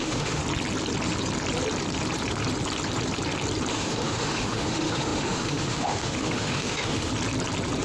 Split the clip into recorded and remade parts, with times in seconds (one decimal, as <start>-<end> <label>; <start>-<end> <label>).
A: 0.0-0.4 remade; 0.4-3.7 recorded; 3.7-7.1 remade; 7.1-7.8 recorded